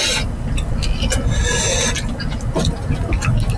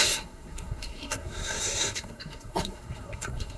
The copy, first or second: second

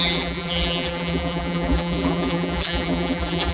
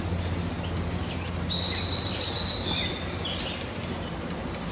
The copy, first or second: first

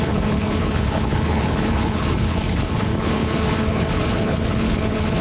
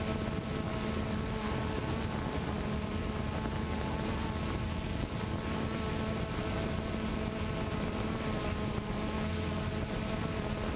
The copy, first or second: first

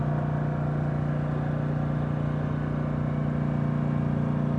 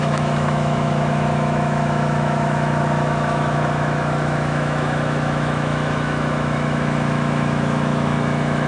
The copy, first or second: second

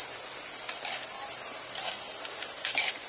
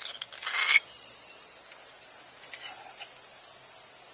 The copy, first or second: first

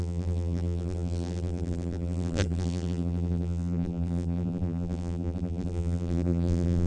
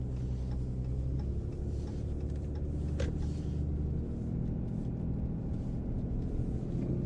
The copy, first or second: first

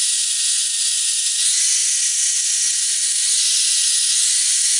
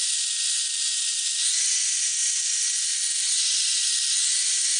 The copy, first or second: first